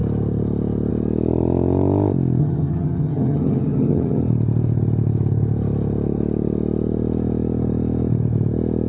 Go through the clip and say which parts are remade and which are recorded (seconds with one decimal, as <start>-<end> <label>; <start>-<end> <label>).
0.0-2.4 recorded; 2.4-4.2 remade; 4.2-8.9 recorded